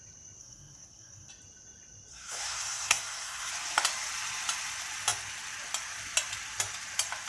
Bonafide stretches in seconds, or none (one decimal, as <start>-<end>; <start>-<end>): 0.0-0.4; 1.3-2.1; 3.5-7.3